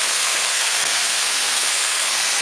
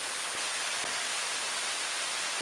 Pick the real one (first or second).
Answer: second